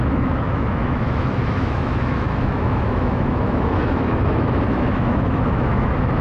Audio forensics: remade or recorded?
remade